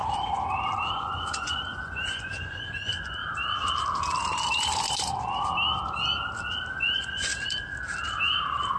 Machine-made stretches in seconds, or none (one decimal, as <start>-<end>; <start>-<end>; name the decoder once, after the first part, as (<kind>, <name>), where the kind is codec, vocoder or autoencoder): 0.9-3.2 (vocoder, Vocos); 6.7-7.3